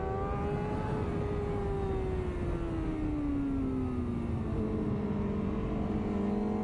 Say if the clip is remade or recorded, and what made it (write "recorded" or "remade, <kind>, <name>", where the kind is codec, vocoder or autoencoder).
recorded